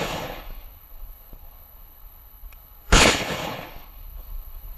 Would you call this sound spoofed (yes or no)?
yes